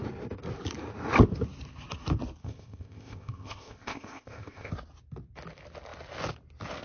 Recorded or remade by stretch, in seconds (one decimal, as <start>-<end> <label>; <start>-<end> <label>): 0.0-2.4 recorded; 2.4-4.7 remade; 4.7-6.8 recorded